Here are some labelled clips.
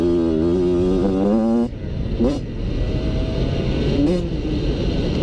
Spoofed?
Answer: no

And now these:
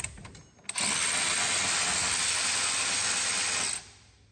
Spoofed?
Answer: no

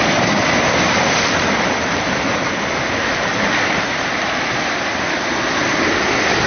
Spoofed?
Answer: no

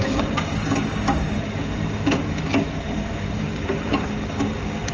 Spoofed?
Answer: yes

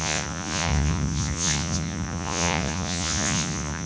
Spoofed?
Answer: yes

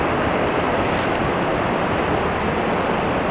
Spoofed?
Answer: no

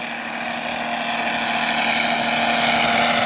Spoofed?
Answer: no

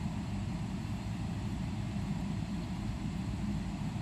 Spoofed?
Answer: yes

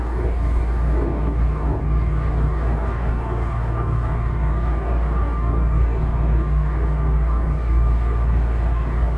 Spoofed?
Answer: yes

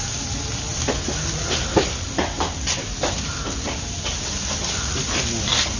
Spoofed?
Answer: no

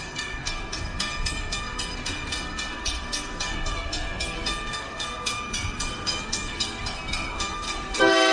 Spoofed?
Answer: yes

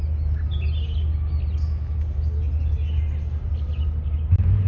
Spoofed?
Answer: no